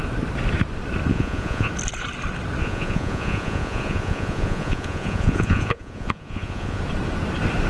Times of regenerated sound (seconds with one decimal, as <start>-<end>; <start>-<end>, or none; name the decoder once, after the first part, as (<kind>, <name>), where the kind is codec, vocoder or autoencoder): 1.1-1.7 (vocoder, Vocos); 2.6-6.8